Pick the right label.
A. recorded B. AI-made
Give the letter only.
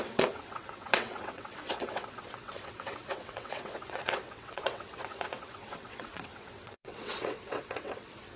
B